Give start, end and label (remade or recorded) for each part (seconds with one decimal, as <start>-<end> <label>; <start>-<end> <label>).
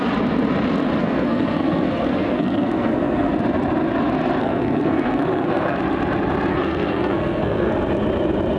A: 0.0-1.0 recorded; 1.0-3.3 remade; 3.3-4.4 recorded; 4.4-5.8 remade; 5.8-6.5 recorded; 6.5-7.7 remade; 7.7-8.6 recorded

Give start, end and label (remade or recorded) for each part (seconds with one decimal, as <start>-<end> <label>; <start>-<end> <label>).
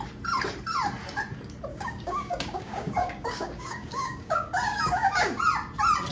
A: 0.0-1.7 recorded; 1.7-5.4 remade; 5.4-6.1 recorded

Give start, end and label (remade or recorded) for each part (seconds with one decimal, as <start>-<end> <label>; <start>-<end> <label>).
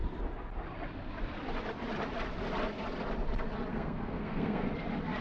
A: 0.0-3.7 recorded; 3.7-4.7 remade; 4.7-5.2 recorded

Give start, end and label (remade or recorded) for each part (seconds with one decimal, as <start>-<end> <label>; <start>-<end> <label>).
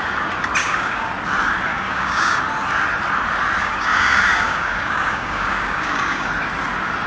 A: 0.0-0.6 recorded; 0.6-1.1 remade; 1.1-1.7 recorded; 1.7-2.4 remade; 2.4-3.6 recorded; 3.6-6.3 remade; 6.3-7.1 recorded